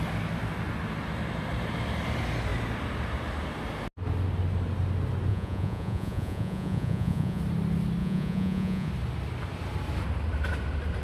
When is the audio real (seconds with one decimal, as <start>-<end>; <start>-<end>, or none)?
0.0-5.3; 7.4-8.0; 8.9-11.0